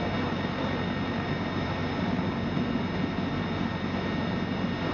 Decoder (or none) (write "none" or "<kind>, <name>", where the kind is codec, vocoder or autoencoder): none